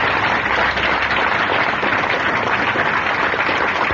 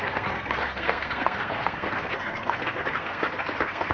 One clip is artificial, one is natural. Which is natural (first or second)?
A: first